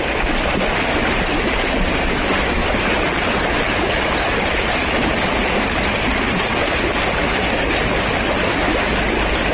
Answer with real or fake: real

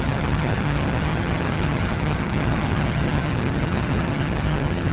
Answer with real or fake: fake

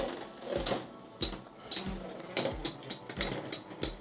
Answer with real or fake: real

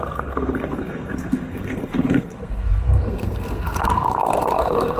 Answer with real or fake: fake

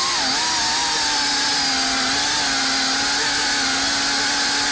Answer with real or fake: real